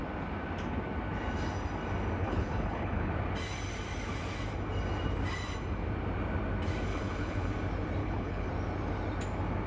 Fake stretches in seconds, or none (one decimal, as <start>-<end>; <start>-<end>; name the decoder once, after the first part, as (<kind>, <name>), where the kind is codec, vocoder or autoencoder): 2.2-3.1 (codec, HILCodec); 6.9-7.5; 8.0-8.5